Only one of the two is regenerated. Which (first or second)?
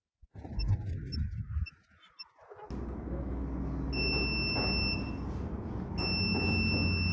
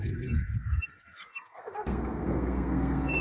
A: second